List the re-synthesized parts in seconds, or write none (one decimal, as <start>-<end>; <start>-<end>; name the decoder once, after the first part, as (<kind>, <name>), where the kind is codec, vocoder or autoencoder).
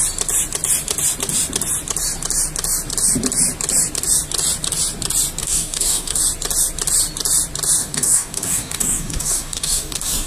5.4-6.2 (codec, DAC); 7.8-10.3